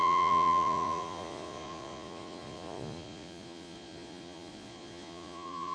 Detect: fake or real fake